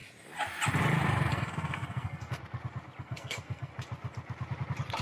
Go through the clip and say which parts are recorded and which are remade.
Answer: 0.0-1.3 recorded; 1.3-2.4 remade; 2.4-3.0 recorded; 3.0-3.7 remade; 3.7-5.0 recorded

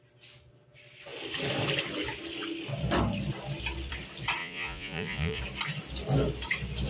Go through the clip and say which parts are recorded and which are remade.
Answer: 0.0-4.4 recorded; 4.4-5.4 remade; 5.4-6.9 recorded

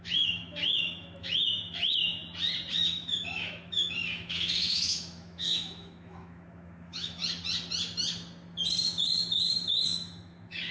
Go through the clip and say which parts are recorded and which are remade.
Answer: 0.0-2.2 remade; 2.2-2.7 recorded; 2.7-7.2 remade; 7.2-9.5 recorded; 9.5-10.7 remade

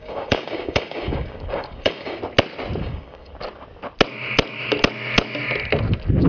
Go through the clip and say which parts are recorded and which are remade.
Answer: 0.0-2.2 remade; 2.2-2.8 recorded; 2.8-3.3 remade; 3.3-6.3 recorded